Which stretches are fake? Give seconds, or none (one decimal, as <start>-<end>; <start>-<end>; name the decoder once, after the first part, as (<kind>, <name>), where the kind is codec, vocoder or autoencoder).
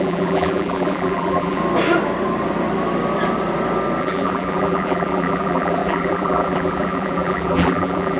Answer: 0.0-1.6 (vocoder, BigVGAN v2); 4.0-8.2